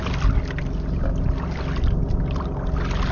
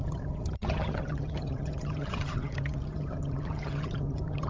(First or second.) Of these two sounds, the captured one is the first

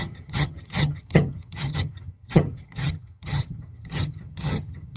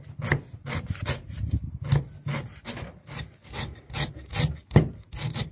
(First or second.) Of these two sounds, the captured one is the second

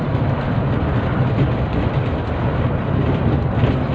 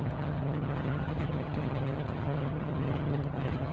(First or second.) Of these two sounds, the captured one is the first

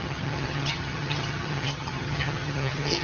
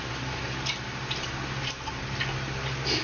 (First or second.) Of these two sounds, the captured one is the second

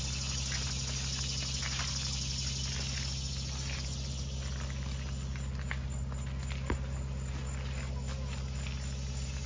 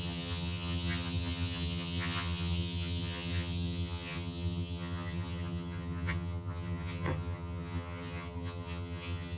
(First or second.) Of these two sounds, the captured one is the first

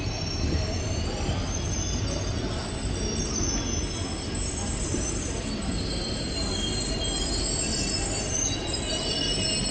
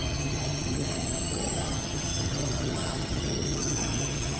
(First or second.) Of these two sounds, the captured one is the first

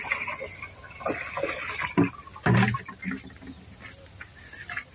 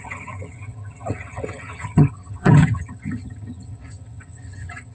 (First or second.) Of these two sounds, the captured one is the first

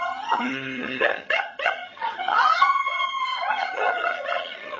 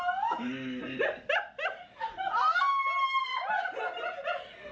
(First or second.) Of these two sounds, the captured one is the second